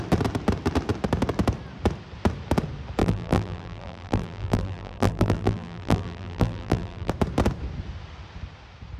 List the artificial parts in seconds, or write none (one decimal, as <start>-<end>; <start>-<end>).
3.0-7.1